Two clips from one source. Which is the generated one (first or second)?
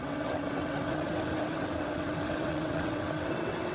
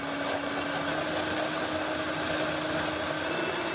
first